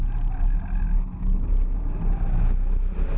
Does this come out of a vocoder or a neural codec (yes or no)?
no